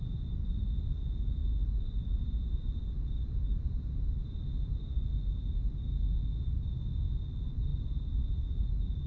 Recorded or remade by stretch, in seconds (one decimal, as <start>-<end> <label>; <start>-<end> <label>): 0.0-9.1 recorded